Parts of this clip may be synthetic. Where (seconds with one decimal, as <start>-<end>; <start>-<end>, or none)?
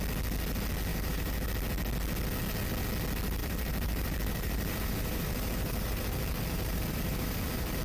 0.9-1.5; 3.4-7.8